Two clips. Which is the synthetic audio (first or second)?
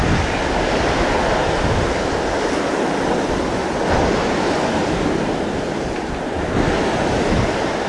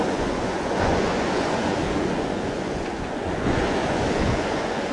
second